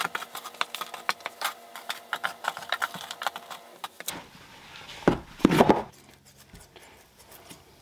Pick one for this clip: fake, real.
fake